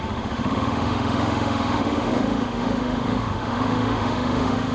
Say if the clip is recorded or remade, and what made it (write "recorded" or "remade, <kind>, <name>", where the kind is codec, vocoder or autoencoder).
remade, autoencoder, DAC-VAE